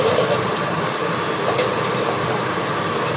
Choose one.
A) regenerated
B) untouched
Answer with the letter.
B